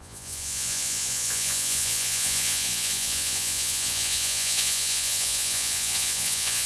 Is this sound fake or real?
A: fake